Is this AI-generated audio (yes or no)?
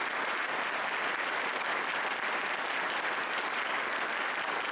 no